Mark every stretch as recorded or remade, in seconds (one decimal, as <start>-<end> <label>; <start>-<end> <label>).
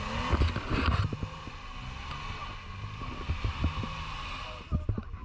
0.0-5.2 recorded